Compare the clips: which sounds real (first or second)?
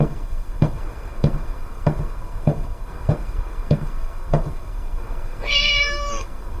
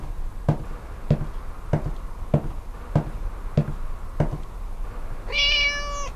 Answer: second